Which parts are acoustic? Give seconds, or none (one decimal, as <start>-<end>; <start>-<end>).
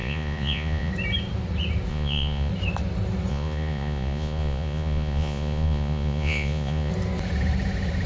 0.9-1.9; 2.5-3.3; 6.9-8.1